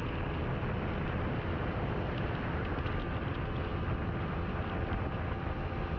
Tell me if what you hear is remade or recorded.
recorded